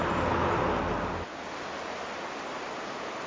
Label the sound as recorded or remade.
recorded